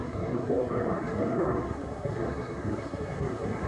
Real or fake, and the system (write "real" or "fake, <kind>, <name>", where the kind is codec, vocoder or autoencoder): fake, codec, SNAC